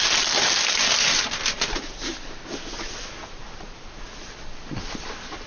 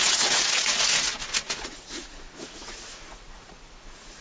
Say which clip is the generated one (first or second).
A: second